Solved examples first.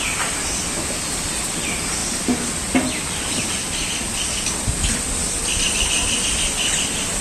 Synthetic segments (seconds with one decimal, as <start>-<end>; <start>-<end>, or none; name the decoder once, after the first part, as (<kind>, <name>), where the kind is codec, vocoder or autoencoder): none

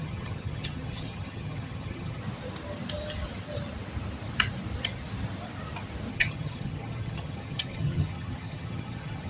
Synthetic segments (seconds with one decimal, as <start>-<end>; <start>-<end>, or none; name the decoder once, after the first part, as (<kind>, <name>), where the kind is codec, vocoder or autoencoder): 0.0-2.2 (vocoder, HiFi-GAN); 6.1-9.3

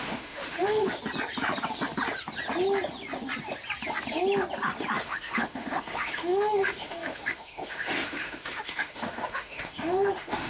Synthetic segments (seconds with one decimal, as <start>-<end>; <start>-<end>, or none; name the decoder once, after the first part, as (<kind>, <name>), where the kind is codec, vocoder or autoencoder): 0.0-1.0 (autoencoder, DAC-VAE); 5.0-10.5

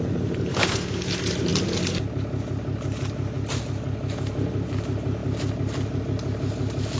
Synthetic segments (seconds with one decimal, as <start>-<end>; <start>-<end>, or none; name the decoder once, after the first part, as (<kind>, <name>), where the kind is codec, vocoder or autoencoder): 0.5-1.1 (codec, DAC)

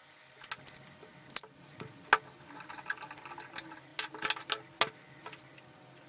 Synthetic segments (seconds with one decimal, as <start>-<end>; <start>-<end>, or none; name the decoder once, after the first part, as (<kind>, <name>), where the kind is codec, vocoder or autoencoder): none